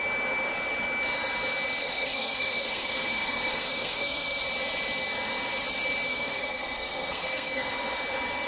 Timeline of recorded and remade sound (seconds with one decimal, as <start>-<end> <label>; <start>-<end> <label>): 0.0-1.8 recorded; 1.8-4.4 remade; 4.4-6.1 recorded; 6.1-7.7 remade; 7.7-8.5 recorded